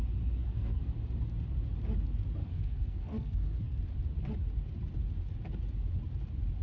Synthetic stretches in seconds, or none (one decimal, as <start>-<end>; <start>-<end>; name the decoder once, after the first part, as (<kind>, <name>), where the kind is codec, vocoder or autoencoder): 0.4-0.9 (codec, SNAC); 2.4-3.8